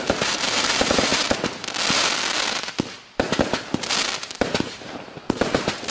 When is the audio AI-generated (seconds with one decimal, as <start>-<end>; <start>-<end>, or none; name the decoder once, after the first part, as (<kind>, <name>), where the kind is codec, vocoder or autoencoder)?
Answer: 0.0-1.1 (vocoder, BigVGAN v2); 4.6-5.9